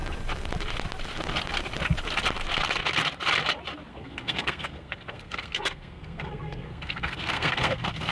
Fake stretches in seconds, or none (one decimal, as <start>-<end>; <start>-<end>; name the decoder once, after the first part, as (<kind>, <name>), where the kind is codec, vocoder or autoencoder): 3.9-8.1 (codec, SNAC)